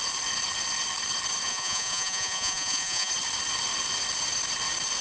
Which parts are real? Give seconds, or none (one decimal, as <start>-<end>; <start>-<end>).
0.0-1.5; 3.1-5.0